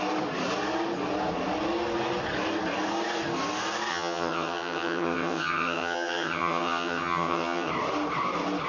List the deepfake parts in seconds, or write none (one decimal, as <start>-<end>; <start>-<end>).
3.9-7.7